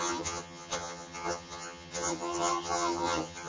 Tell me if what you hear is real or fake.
fake